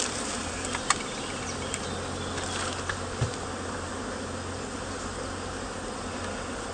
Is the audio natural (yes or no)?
yes